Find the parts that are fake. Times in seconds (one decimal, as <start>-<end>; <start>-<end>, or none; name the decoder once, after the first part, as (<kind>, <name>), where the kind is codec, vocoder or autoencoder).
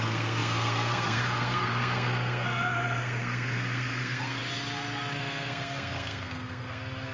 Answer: 0.0-4.4 (codec, SNAC); 5.2-7.1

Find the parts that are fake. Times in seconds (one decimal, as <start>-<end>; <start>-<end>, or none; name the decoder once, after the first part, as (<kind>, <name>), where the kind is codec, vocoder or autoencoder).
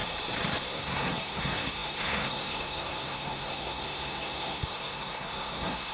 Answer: 0.6-5.9 (codec, SNAC)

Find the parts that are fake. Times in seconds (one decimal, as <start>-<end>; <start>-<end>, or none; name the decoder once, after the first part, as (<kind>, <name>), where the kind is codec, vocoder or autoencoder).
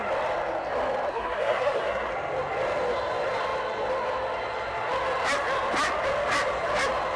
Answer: 1.1-2.1 (codec, SNAC)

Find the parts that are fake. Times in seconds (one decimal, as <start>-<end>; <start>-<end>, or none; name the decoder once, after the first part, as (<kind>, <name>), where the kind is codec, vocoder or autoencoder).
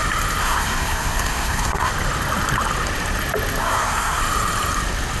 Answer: 0.4-1.9 (codec, SNAC); 3.6-4.2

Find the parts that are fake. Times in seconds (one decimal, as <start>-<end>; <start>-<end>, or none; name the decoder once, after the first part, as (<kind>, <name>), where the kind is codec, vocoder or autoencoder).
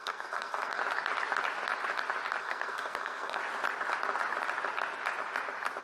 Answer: 0.0-0.8 (codec, SNAC); 2.4-3.4